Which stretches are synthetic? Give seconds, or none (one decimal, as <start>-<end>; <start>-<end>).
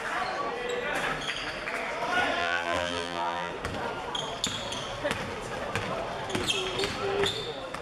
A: 2.4-3.5